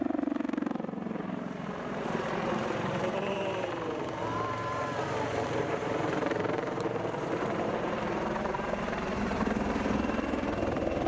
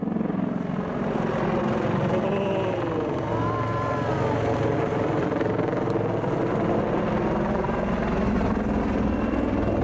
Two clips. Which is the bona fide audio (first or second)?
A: second